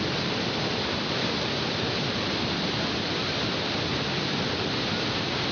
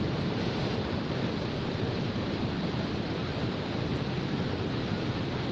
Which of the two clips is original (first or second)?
first